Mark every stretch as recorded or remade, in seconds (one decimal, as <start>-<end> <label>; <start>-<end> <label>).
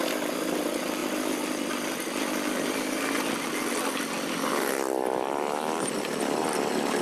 0.0-7.0 recorded